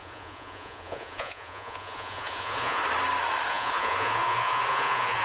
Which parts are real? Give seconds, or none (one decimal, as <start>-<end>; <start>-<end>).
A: 2.8-3.5